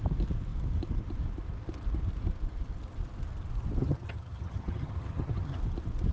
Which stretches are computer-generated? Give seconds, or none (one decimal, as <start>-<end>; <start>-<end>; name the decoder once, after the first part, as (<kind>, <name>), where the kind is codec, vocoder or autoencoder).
3.8-5.6 (vocoder, HiFi-GAN)